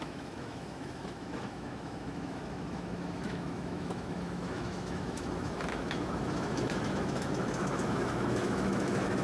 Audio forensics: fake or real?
fake